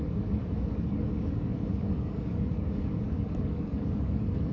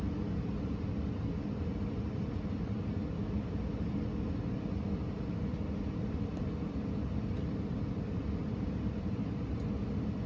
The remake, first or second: first